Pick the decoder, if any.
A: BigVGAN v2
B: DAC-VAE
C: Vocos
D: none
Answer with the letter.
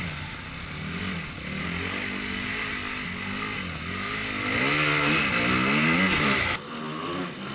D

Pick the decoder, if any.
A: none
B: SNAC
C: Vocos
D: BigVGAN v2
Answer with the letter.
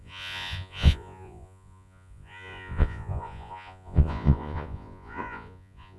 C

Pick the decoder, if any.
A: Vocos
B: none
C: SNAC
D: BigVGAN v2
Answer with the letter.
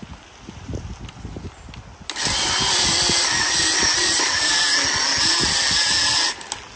B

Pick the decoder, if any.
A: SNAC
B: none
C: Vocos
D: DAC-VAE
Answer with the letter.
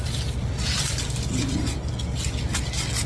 B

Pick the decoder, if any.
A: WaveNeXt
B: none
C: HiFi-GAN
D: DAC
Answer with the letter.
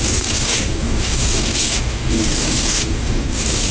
D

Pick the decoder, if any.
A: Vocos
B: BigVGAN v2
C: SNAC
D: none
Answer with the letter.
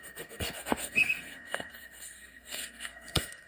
C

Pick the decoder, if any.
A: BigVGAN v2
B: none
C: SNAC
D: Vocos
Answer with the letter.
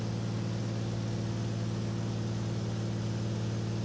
B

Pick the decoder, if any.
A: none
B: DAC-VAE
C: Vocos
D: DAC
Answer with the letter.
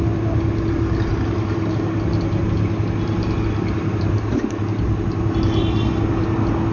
A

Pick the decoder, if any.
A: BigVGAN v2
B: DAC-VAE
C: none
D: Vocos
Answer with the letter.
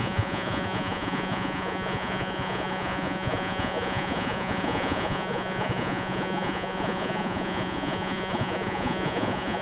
D